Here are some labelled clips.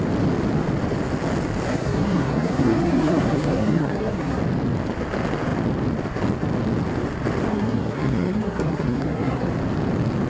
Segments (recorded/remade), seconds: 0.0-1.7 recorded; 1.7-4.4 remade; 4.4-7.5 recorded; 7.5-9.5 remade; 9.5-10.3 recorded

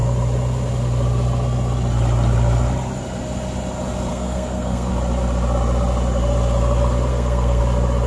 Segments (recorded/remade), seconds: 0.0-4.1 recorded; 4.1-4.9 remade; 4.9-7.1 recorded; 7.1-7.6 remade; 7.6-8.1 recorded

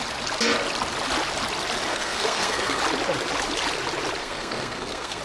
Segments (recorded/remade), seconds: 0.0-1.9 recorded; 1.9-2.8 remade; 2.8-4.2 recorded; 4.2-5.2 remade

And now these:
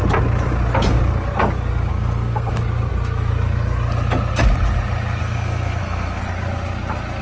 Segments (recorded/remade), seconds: 0.0-1.9 recorded; 1.9-2.5 remade; 2.5-5.2 recorded; 5.2-6.2 remade; 6.2-7.2 recorded

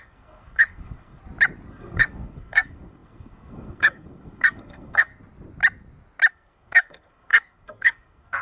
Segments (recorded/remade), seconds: 0.0-1.2 remade; 1.2-1.7 recorded; 1.7-5.1 remade; 5.1-6.3 recorded; 6.3-8.4 remade

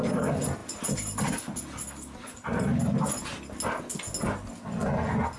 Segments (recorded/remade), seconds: 0.0-5.4 recorded

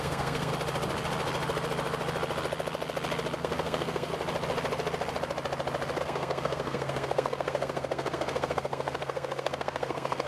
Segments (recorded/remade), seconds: 0.0-0.5 remade; 0.5-3.4 recorded; 3.4-4.1 remade; 4.1-6.0 recorded; 6.0-10.3 remade